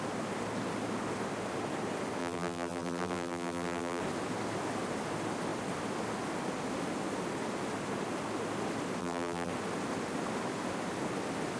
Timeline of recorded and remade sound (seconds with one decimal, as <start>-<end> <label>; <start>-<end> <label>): 0.0-2.2 recorded; 2.2-4.0 remade; 4.0-9.0 recorded; 9.0-9.5 remade; 9.5-11.6 recorded